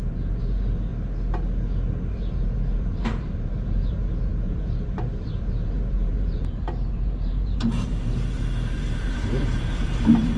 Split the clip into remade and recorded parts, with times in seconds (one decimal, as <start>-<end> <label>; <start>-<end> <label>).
0.0-0.9 remade; 0.9-2.1 recorded; 2.1-10.4 remade

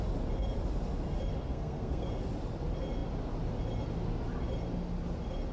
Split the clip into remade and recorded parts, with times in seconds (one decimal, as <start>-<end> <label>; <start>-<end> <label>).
0.0-1.5 recorded; 1.5-2.1 remade; 2.1-5.5 recorded

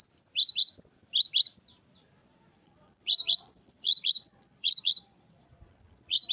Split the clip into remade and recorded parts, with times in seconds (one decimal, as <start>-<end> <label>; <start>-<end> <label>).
0.0-2.2 recorded; 2.2-6.3 remade